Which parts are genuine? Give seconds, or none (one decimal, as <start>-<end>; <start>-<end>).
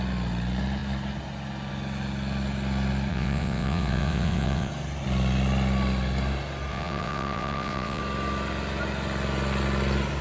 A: 0.0-3.1; 4.7-6.7; 8.0-10.2